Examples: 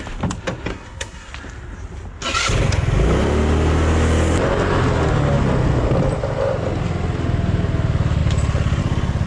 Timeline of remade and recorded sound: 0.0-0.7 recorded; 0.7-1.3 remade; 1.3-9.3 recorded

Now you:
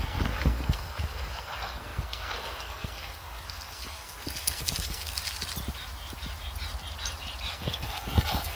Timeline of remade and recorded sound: 0.0-5.2 remade; 5.2-7.5 recorded; 7.5-8.6 remade

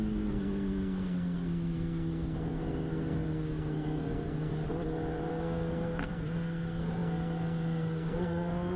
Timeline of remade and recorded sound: 0.0-4.5 remade; 4.5-5.3 recorded; 5.3-8.8 remade

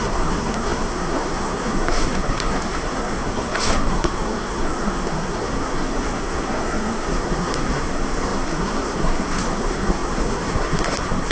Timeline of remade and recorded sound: 0.0-11.3 remade

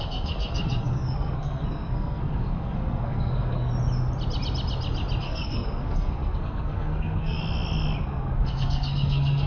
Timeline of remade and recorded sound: 0.0-3.7 remade; 3.7-5.2 recorded; 5.2-7.4 remade; 7.4-8.0 recorded; 8.0-9.5 remade

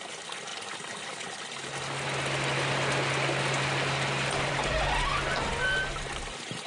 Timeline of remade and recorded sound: 0.0-6.7 recorded

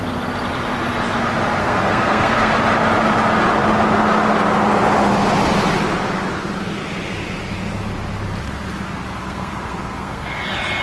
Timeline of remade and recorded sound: 0.0-1.6 recorded; 1.6-2.5 remade; 2.5-9.1 recorded; 9.1-10.4 remade; 10.4-10.8 recorded